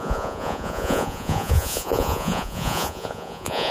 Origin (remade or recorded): remade